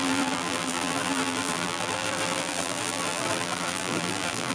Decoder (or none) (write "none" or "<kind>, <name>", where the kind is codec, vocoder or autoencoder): vocoder, BigVGAN v2